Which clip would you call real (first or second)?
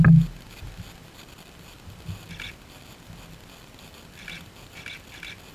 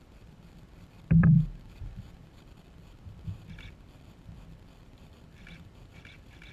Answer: first